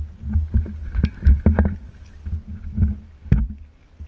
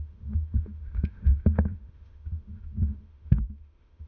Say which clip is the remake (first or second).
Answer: second